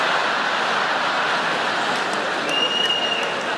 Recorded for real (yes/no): yes